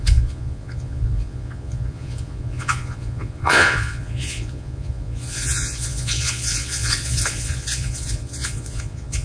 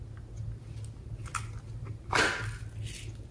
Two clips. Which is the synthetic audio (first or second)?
first